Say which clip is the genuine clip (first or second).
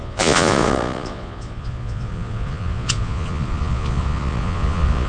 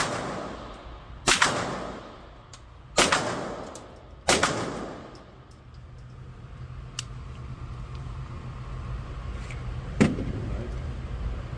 second